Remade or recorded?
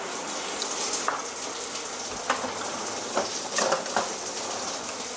recorded